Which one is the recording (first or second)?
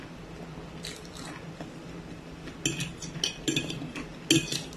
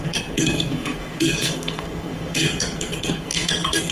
first